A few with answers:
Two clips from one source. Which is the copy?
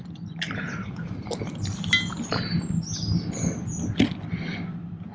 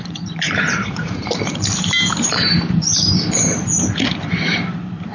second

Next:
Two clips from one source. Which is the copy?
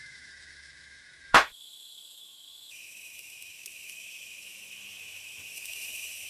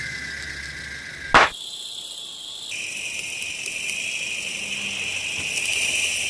first